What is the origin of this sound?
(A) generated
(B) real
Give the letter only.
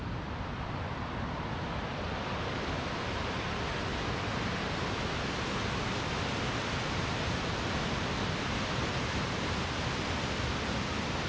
B